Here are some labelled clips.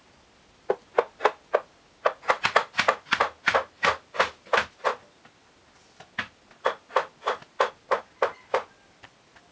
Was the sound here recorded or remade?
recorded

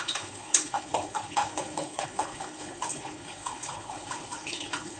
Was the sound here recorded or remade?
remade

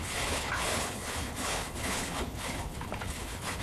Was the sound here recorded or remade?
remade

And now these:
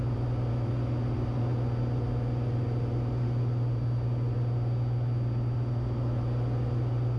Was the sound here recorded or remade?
recorded